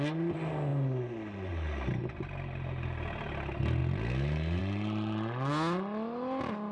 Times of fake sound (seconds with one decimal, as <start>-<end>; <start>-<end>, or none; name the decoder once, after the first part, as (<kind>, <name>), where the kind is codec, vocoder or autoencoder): none

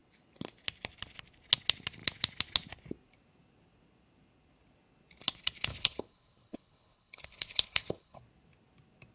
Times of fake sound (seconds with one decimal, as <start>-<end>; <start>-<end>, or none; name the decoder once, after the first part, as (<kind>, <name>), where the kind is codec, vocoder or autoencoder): 5.7-8.2 (codec, HILCodec)

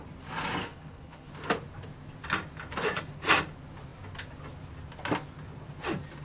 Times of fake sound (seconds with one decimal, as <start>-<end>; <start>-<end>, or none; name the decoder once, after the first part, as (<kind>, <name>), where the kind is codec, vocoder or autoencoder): 0.6-1.3 (codec, HILCodec)

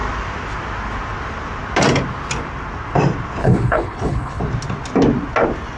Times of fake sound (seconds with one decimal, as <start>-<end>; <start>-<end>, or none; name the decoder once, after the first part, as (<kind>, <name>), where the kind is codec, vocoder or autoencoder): 3.4-4.4 (codec, HILCodec)

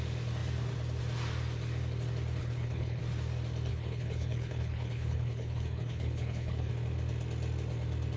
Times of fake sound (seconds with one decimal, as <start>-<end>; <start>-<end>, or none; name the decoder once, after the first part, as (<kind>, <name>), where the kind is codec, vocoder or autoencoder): 2.4-3.0 (codec, HILCodec); 3.7-6.7